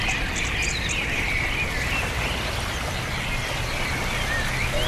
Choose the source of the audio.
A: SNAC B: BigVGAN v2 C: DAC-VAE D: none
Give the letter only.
D